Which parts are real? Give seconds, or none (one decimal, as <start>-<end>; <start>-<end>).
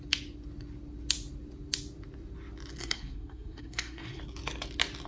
0.0-2.8; 4.2-5.1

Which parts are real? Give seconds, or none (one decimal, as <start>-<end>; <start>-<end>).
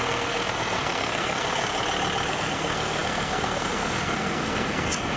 1.7-2.3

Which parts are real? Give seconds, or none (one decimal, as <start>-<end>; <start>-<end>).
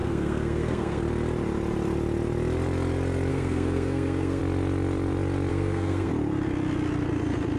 1.0-3.3; 4.4-5.5; 6.1-7.6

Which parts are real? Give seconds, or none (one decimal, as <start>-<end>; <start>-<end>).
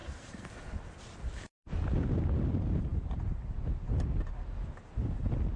0.5-5.6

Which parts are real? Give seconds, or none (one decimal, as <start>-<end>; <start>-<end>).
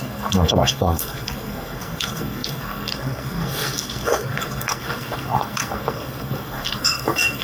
none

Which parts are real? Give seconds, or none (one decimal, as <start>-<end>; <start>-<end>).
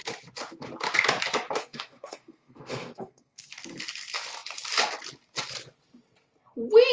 0.0-1.6; 3.5-6.9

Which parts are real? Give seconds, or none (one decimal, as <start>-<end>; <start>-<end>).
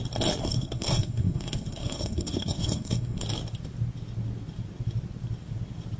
0.0-0.4; 3.2-6.0